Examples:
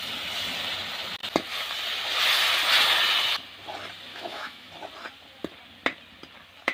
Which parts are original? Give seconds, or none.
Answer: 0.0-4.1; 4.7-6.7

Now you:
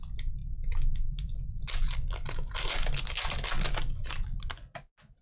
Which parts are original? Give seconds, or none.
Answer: 0.0-5.2

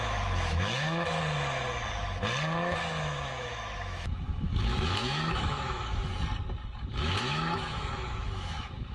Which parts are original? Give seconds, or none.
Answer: 1.2-2.6; 6.1-6.9

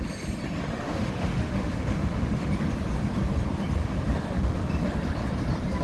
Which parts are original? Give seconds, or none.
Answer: 0.0-0.7; 2.5-3.8; 4.7-5.8

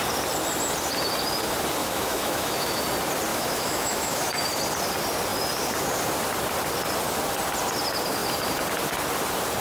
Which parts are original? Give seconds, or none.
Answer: 0.0-1.8; 2.8-3.3; 4.3-9.6

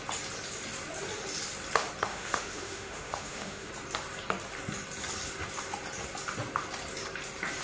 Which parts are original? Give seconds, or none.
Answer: 0.0-2.1; 3.7-7.6

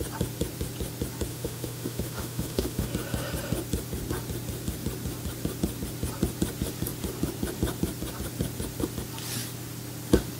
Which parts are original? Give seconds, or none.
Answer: 0.0-1.3; 2.9-10.4

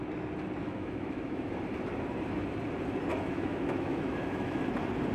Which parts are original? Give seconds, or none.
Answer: 0.0-0.6; 1.5-3.1; 4.6-5.1